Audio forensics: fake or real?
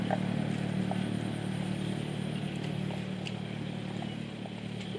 real